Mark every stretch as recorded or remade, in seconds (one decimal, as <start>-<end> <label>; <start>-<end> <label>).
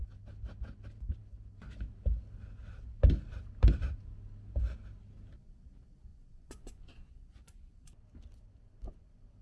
0.0-6.1 recorded; 6.1-8.0 remade; 8.0-9.4 recorded